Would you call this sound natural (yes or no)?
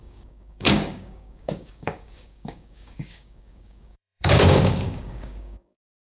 no